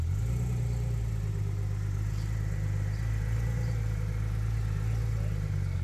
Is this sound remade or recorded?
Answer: recorded